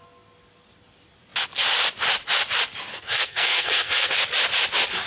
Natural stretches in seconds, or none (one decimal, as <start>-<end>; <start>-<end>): 0.0-2.9; 4.1-5.1